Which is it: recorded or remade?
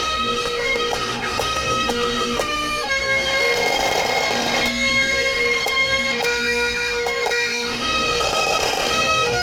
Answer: remade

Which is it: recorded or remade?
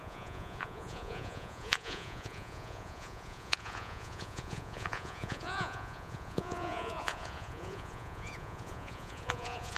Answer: remade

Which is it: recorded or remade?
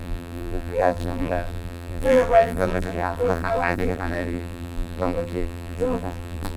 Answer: remade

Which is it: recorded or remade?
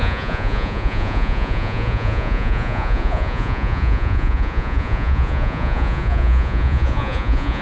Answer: remade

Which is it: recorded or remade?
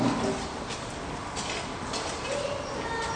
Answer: recorded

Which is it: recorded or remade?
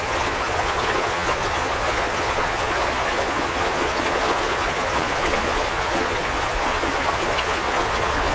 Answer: remade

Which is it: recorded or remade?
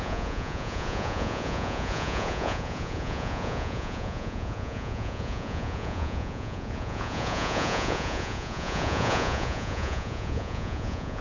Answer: remade